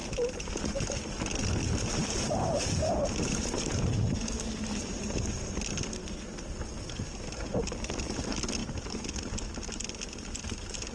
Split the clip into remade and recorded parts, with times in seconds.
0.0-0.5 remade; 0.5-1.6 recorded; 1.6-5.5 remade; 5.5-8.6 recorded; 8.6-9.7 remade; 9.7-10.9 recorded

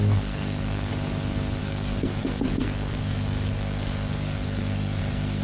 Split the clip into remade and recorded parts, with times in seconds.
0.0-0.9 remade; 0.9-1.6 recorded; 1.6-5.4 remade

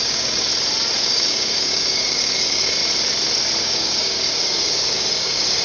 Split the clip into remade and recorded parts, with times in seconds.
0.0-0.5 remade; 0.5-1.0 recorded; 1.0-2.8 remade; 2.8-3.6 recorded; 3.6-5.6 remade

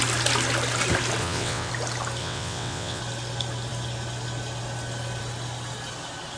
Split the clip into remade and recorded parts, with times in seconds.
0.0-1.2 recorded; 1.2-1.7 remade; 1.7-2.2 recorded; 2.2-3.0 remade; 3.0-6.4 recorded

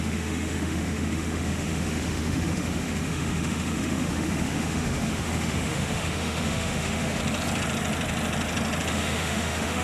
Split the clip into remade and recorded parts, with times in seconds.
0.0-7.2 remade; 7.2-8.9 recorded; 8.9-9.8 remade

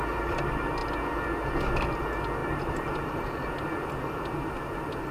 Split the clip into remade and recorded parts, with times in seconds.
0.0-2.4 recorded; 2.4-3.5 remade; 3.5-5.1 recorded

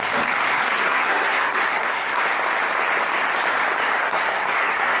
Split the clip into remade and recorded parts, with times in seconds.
0.0-0.5 recorded; 0.5-2.2 remade; 2.2-4.0 recorded; 4.0-5.0 remade